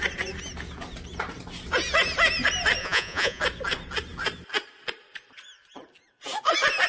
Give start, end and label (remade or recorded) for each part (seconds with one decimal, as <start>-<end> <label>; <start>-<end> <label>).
0.0-2.8 recorded; 2.8-3.4 remade; 3.4-6.9 recorded